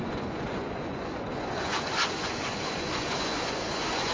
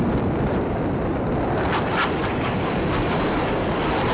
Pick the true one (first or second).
second